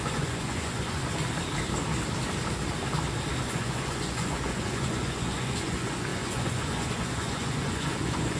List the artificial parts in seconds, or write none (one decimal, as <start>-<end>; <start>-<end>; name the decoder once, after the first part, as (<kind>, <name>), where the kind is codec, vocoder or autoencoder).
0.0-1.0 (vocoder, Vocos); 3.4-8.4